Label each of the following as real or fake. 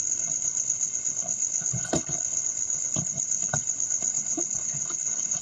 fake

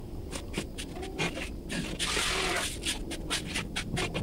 real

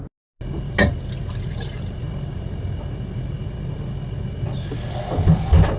real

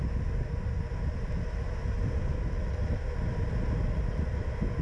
real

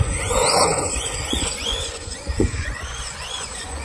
fake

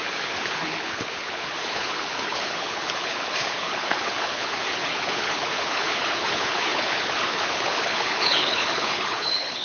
fake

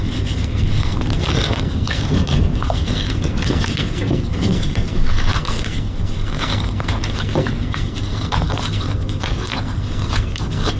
fake